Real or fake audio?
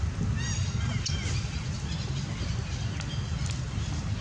real